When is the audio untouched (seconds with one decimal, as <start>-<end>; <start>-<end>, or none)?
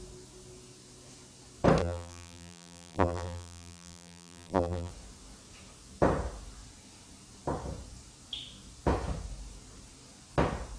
0.0-1.8; 4.9-10.8